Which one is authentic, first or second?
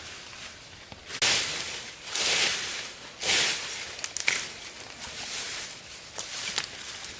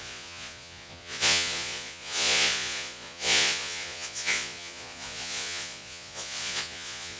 first